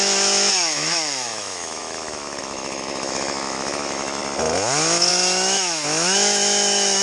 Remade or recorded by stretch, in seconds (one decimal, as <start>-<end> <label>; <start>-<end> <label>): 0.0-4.2 remade; 4.2-5.1 recorded; 5.1-7.0 remade